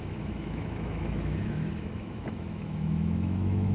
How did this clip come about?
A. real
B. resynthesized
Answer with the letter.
B